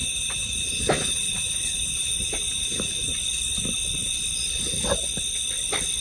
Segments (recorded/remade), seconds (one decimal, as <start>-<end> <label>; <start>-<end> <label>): 0.0-3.1 remade; 3.1-6.0 recorded